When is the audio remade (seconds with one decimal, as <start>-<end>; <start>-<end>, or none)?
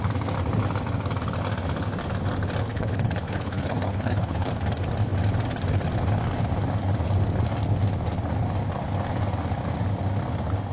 2.7-4.5